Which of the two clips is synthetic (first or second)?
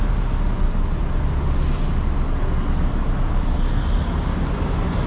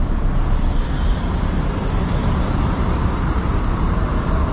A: second